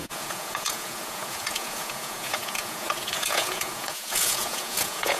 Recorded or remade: remade